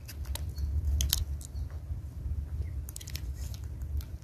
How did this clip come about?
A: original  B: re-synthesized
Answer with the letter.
A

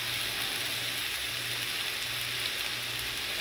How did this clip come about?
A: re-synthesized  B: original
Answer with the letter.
B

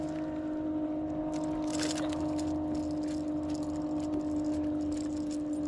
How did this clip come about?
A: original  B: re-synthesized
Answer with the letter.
A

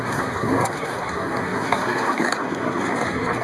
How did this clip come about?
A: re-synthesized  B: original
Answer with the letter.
A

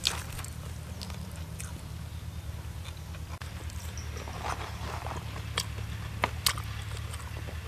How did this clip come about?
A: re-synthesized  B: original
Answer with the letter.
B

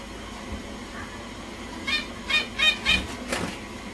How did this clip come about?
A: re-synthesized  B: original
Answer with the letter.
B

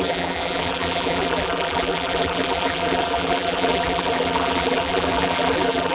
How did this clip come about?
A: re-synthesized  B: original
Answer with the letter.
A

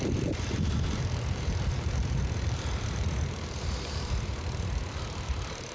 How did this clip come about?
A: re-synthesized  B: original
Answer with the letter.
A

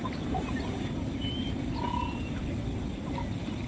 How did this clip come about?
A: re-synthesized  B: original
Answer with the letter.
B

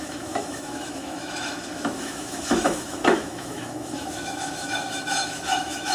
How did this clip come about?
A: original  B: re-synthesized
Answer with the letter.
B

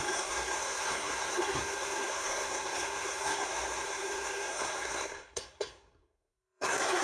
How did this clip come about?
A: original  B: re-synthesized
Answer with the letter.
B